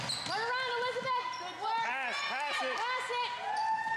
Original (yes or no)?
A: yes